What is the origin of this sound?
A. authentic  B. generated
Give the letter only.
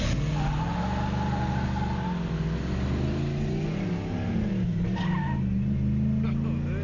A